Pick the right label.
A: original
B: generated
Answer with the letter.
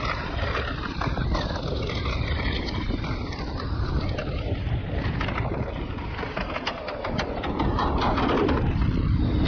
B